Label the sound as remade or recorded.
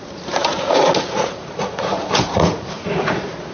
remade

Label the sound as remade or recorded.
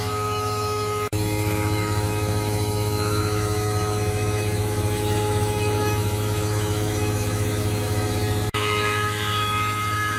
remade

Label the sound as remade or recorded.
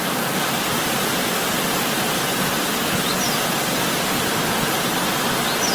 recorded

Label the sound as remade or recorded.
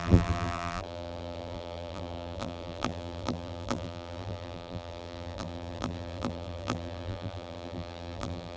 remade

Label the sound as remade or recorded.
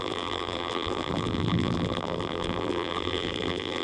remade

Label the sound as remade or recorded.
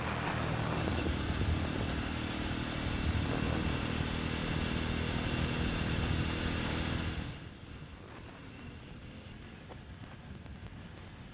recorded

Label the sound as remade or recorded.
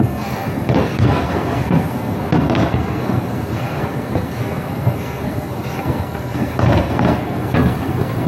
remade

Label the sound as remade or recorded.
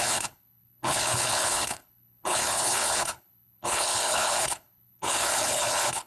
remade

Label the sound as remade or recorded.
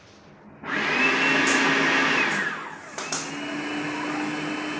recorded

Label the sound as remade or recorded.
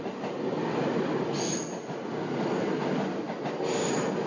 recorded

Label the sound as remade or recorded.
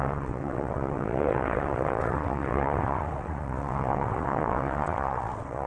remade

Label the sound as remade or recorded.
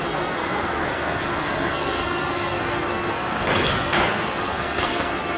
remade